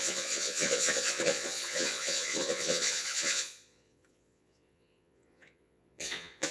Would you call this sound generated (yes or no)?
yes